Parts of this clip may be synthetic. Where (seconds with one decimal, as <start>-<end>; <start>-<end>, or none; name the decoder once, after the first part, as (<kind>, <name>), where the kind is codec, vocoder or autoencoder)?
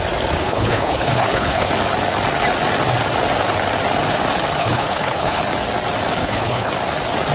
0.4-1.7 (codec, HILCodec); 4.6-5.4; 6.2-6.7